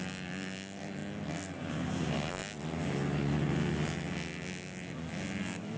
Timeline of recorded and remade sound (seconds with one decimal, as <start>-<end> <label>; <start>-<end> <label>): 0.0-1.0 remade; 1.0-1.7 recorded; 1.7-2.4 remade; 2.4-5.8 recorded